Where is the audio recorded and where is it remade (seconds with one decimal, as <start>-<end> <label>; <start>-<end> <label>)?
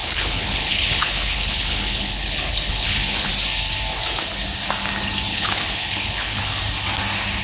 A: 0.0-3.3 remade; 3.3-5.3 recorded; 5.3-6.6 remade; 6.6-7.4 recorded